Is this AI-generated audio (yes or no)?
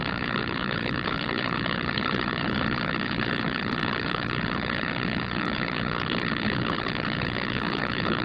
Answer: yes